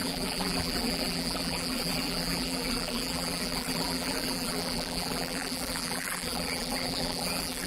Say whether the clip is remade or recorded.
remade